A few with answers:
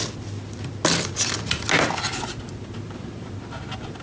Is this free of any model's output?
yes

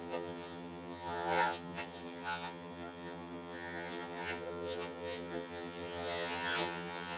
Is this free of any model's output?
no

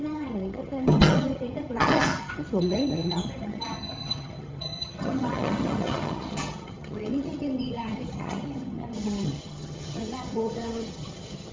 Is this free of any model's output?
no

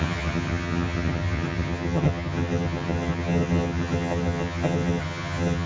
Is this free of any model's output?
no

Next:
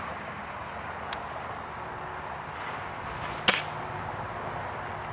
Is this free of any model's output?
yes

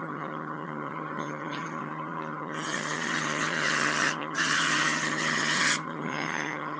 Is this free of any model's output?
no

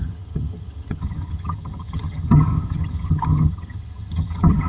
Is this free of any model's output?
no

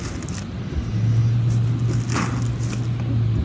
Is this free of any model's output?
yes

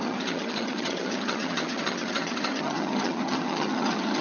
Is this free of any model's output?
no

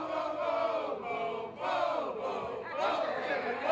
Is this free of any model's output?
yes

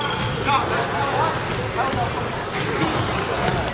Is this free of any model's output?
yes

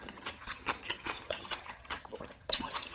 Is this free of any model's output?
no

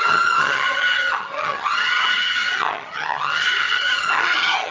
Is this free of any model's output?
no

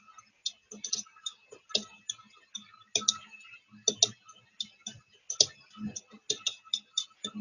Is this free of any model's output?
yes